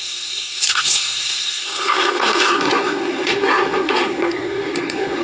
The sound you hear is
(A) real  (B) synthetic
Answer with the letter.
B